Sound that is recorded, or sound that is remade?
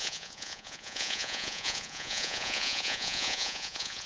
remade